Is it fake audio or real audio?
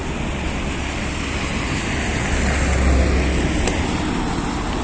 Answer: real